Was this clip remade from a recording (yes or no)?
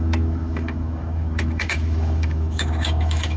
yes